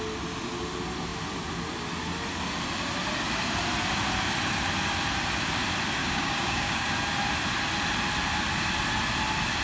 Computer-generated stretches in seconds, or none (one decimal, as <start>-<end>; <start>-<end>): 6.0-6.9